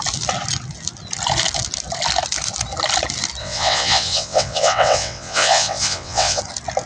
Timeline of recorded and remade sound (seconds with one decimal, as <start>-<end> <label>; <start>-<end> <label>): 0.0-3.4 recorded; 3.4-6.4 remade; 6.4-6.9 recorded